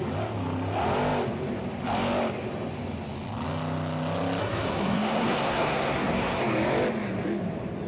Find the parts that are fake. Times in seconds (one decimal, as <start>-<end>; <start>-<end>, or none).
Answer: 4.4-6.4